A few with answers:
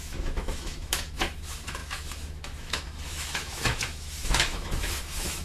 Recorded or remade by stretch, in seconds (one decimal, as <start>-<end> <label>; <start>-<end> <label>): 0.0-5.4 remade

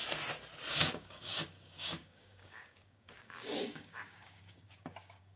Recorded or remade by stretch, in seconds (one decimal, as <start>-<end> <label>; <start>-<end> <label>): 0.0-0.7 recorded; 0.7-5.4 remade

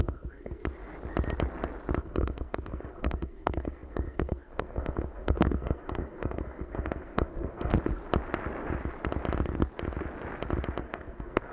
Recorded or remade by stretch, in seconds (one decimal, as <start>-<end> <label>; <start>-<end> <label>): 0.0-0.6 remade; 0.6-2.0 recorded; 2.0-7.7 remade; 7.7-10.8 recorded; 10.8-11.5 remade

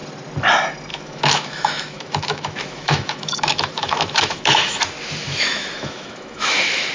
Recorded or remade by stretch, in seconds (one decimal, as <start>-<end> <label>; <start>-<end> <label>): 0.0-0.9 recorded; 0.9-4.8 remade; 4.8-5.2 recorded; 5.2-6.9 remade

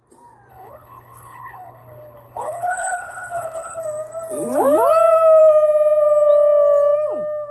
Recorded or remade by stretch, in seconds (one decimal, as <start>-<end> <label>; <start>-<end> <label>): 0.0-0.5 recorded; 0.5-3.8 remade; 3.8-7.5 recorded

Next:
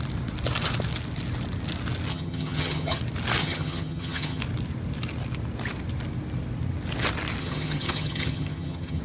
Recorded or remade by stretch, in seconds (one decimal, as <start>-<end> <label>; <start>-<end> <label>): 0.0-2.1 recorded; 2.1-3.0 remade; 3.0-3.4 recorded; 3.4-4.4 remade; 4.4-7.4 recorded; 7.4-9.0 remade

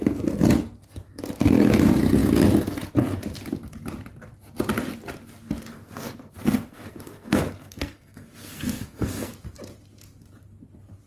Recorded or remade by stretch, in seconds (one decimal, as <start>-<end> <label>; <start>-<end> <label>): 0.0-5.7 recorded; 5.7-9.3 remade; 9.3-11.1 recorded

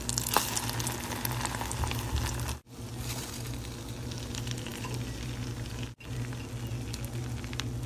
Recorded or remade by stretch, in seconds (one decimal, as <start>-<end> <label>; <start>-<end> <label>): 0.0-7.9 recorded